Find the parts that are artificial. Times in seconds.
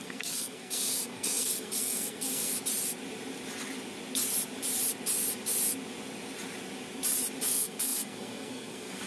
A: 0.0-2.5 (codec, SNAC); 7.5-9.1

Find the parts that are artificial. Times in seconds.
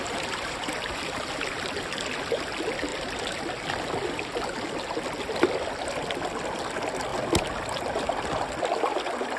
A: none